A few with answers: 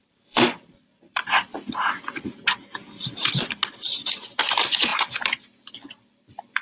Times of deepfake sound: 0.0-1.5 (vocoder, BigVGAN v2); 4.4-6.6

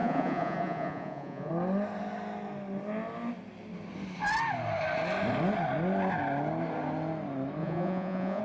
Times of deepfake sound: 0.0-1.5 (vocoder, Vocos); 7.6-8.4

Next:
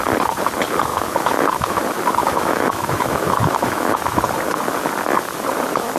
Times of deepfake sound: 0.9-1.8 (autoencoder, DAC-VAE); 2.2-4.2